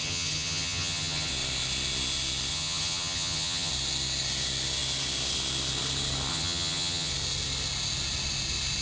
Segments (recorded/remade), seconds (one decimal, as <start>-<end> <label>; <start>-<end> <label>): 0.0-1.3 remade; 1.3-2.5 recorded; 2.5-3.7 remade; 3.7-6.3 recorded; 6.3-7.1 remade; 7.1-8.8 recorded